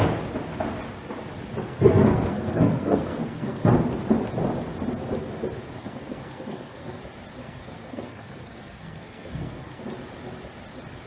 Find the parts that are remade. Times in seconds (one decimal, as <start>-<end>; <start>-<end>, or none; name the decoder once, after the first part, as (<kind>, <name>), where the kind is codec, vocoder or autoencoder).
1.6-3.7 (codec, SNAC); 5.8-7.0; 7.4-9.8